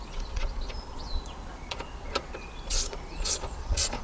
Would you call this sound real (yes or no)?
no